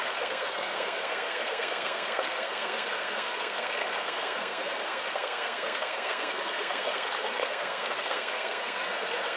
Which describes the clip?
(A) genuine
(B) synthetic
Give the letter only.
B